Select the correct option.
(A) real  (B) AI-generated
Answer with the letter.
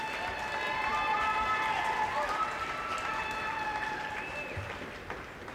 A